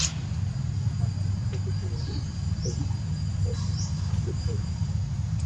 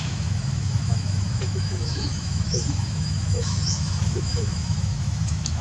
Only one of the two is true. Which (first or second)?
first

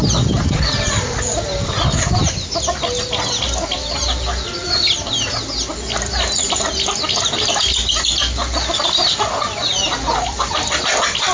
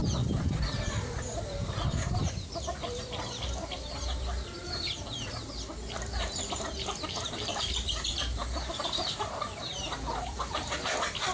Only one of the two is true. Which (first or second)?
first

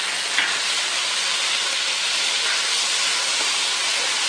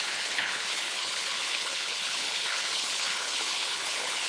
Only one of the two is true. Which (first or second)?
first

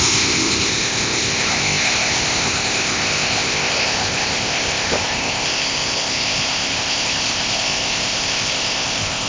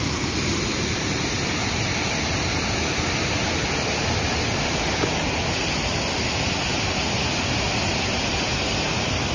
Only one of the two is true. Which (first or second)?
second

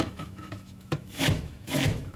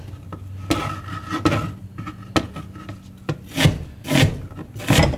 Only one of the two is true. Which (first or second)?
second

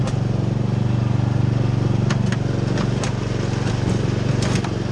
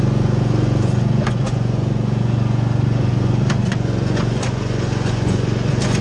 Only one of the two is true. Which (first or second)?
first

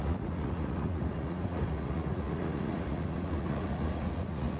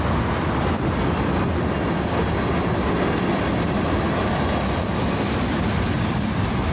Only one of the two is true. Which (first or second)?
second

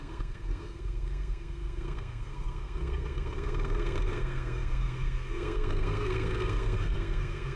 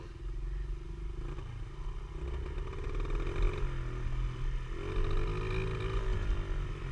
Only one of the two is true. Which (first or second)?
second